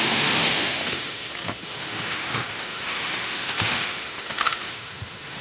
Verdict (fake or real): fake